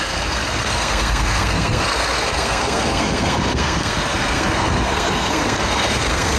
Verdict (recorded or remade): remade